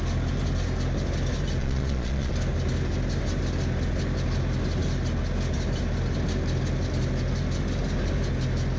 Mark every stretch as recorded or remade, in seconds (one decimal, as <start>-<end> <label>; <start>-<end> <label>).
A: 0.0-1.6 recorded; 1.6-2.3 remade; 2.3-8.8 recorded

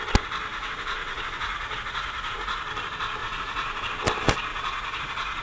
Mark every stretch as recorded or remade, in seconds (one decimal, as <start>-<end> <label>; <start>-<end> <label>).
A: 0.0-0.5 recorded; 0.5-2.6 remade; 2.6-3.2 recorded; 3.2-3.8 remade; 3.8-4.5 recorded; 4.5-5.4 remade

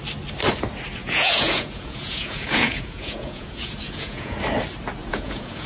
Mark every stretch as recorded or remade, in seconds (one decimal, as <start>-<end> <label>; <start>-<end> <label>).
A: 0.0-1.0 recorded; 1.0-4.4 remade; 4.4-5.0 recorded; 5.0-5.7 remade

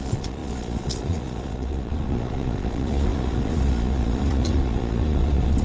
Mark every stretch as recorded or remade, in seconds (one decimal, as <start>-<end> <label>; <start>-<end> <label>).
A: 0.0-5.6 remade

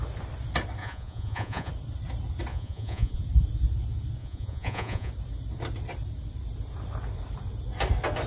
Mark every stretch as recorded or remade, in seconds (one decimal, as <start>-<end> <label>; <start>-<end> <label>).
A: 0.0-0.8 recorded; 0.8-1.7 remade; 1.7-2.5 recorded; 2.5-3.2 remade; 3.2-4.2 recorded; 4.2-5.1 remade; 5.1-8.3 recorded

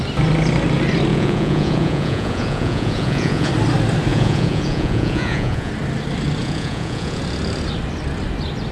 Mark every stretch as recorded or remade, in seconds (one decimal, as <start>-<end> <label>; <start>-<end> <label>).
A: 0.0-1.1 recorded; 1.1-3.5 remade; 3.5-4.1 recorded; 4.1-5.7 remade; 5.7-6.4 recorded; 6.4-7.2 remade; 7.2-8.7 recorded

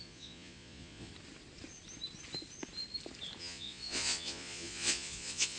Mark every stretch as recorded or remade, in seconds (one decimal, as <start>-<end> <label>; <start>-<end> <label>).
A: 0.0-1.1 remade; 1.1-3.4 recorded; 3.4-5.6 remade